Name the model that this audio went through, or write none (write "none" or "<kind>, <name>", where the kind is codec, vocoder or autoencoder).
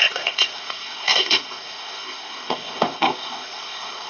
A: codec, ZipCodec